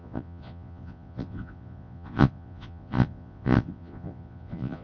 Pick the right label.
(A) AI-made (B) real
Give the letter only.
A